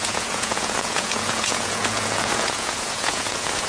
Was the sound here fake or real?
fake